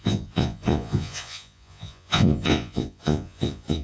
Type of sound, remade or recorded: remade